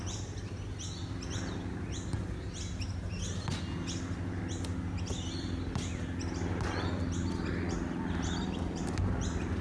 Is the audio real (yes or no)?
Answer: yes